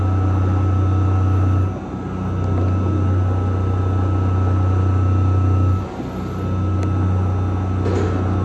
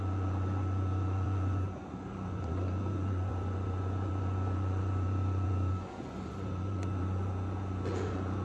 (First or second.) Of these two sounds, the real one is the first